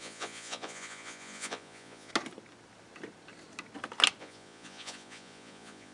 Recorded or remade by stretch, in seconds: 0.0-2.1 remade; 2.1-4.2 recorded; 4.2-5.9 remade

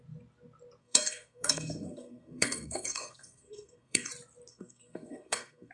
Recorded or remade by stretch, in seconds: 0.0-0.8 recorded; 0.8-4.1 remade; 4.1-4.5 recorded; 4.5-5.7 remade

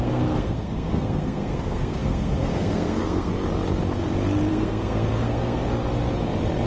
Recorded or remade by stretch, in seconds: 0.0-3.3 remade; 3.3-4.5 recorded; 4.5-5.6 remade; 5.6-6.7 recorded

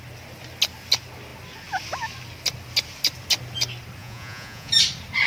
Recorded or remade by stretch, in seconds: 0.0-4.0 recorded; 4.0-4.7 remade; 4.7-5.3 recorded